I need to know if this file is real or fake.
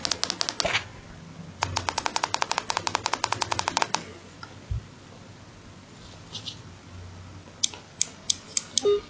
real